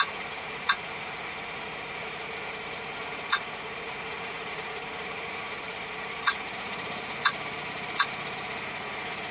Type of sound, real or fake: fake